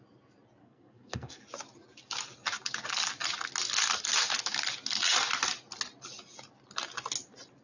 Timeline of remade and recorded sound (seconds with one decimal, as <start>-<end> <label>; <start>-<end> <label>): 0.0-0.6 recorded; 0.6-1.4 remade; 1.4-7.6 recorded